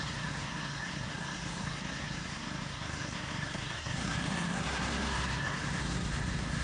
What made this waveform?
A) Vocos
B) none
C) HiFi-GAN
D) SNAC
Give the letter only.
D